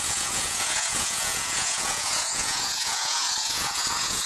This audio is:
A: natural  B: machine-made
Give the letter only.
B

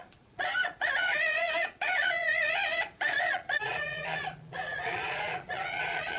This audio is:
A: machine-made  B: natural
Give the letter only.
A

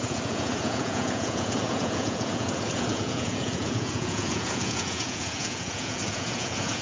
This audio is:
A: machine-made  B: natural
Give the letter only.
A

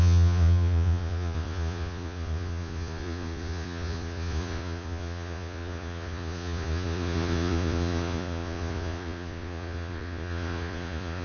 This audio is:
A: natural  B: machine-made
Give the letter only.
B